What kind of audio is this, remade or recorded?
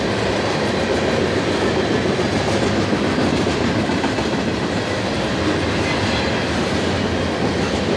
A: recorded